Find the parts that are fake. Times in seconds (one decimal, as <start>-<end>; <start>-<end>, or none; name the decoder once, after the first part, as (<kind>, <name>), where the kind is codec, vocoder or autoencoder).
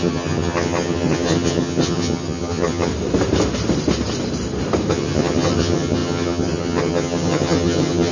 0.0-2.9 (vocoder, HiFi-GAN); 4.9-8.1